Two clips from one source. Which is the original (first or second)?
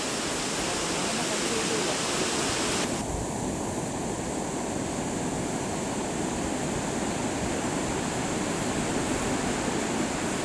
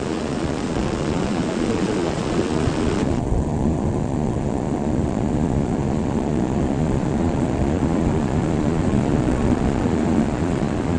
first